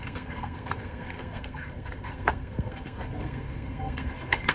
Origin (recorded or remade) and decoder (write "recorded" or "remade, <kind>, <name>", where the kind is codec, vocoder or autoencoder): remade, codec, SNAC